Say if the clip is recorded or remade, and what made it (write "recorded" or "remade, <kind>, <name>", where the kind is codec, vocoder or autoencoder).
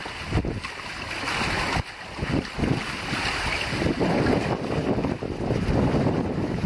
recorded